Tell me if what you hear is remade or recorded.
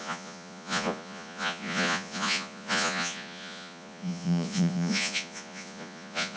remade